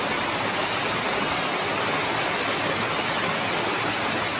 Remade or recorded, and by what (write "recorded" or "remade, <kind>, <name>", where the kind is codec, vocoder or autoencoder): recorded